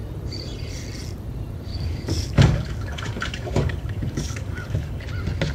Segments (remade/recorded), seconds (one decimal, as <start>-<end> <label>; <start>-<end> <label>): 0.0-1.7 recorded; 1.7-5.0 remade; 5.0-5.5 recorded